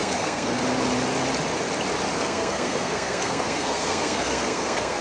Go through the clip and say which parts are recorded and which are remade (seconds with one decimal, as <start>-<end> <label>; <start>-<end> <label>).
0.0-0.6 remade; 0.6-2.1 recorded; 2.1-5.0 remade